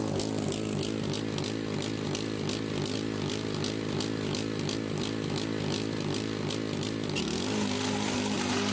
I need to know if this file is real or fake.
real